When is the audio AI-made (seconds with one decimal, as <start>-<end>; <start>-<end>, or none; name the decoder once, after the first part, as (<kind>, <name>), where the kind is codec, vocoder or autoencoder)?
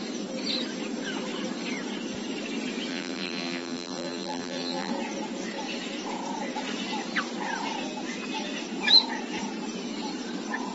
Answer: 2.9-4.9 (vocoder, BigVGAN v2)